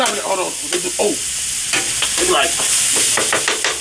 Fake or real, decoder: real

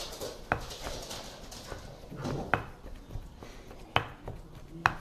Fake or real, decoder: real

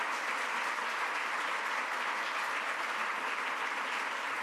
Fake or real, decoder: real